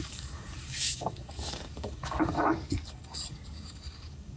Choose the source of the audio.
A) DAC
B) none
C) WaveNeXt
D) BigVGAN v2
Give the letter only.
A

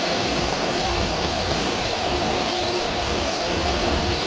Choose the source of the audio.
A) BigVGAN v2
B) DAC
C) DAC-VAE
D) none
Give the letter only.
B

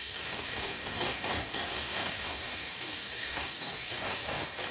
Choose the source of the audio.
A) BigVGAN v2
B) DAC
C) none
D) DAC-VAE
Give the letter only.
B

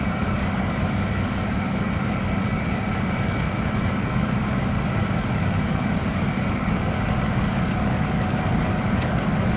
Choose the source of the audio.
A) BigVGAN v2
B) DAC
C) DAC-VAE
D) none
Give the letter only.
B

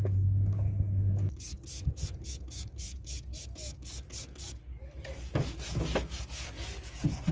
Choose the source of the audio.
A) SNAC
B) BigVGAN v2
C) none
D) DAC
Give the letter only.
D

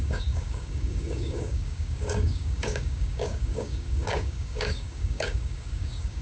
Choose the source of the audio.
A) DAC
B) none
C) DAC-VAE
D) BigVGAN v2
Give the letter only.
A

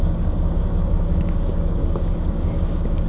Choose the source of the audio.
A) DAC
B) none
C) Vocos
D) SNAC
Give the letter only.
A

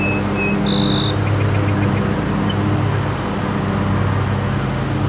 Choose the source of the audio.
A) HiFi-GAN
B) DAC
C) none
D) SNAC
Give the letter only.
C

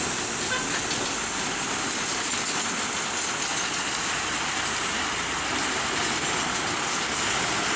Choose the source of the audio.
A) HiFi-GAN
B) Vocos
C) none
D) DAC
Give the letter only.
C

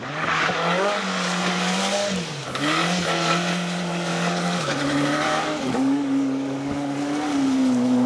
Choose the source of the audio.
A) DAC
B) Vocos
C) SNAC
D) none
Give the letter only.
A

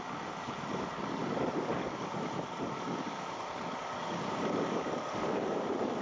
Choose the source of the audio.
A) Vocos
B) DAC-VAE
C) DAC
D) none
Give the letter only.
C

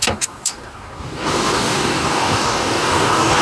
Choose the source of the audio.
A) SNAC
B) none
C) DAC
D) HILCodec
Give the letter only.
C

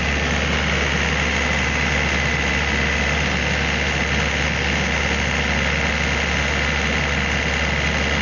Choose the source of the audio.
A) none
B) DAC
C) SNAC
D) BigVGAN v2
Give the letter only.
A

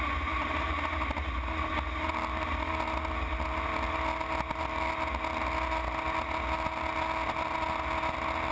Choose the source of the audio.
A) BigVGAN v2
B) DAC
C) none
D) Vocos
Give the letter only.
C